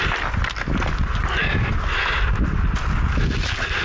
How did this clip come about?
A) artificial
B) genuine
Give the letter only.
B